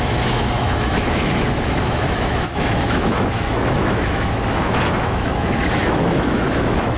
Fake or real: fake